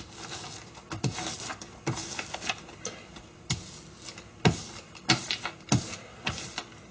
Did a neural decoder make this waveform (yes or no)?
no